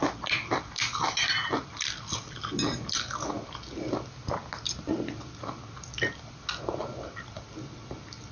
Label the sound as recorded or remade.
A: recorded